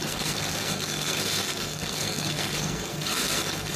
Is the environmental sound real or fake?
fake